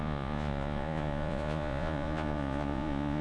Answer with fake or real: fake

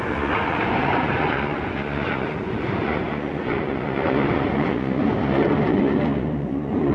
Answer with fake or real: fake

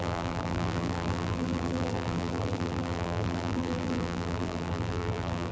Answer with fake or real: fake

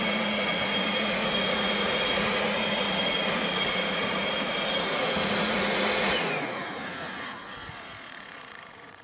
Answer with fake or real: fake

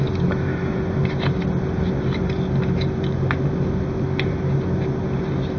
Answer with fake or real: real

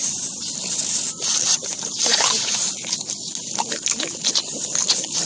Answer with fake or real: real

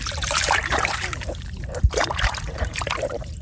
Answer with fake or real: fake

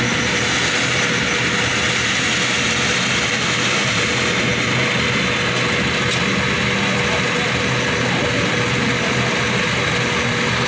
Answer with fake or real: real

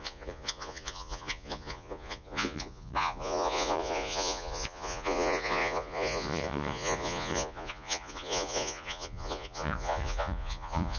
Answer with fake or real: fake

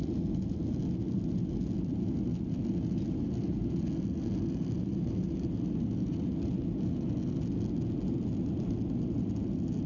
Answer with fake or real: real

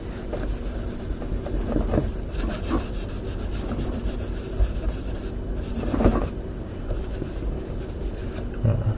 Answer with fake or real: real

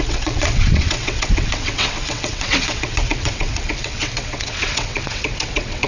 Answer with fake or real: fake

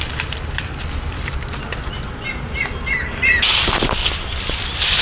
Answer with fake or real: real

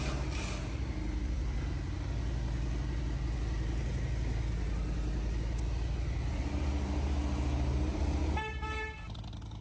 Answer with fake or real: real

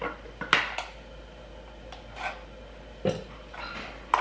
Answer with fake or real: real